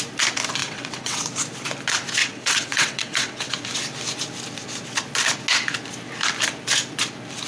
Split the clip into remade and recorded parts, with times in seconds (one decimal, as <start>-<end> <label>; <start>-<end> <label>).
0.0-0.6 recorded; 0.6-1.3 remade; 1.3-2.2 recorded; 2.2-3.5 remade; 3.5-7.5 recorded